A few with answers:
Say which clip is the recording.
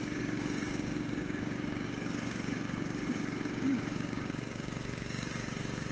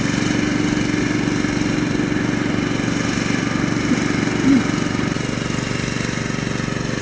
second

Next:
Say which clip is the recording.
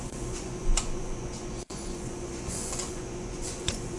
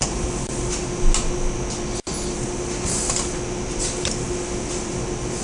second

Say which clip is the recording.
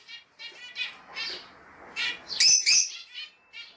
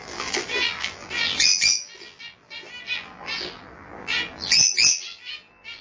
first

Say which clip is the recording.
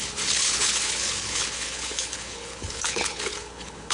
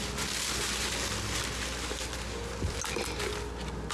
second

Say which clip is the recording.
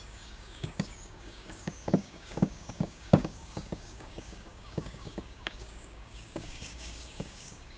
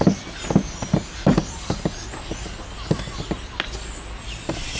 second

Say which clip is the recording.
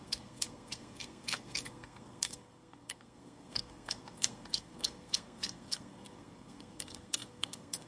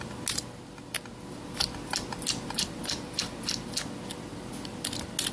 second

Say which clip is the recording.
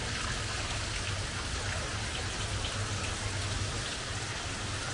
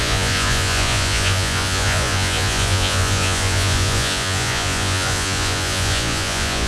first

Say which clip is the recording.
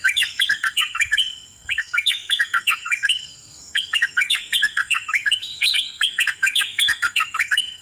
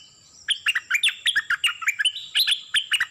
second